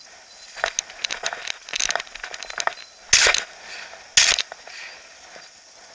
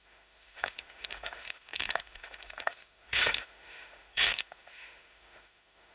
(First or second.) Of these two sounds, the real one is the first